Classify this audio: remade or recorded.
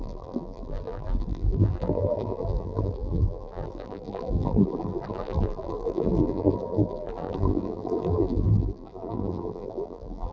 remade